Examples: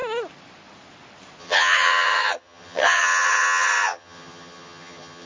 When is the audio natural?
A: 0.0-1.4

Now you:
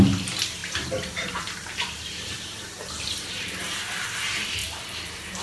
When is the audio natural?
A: 0.0-0.6; 3.8-4.6

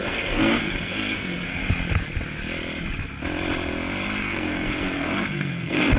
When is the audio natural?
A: 1.6-4.2